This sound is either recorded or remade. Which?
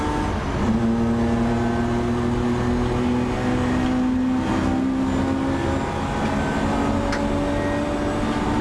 recorded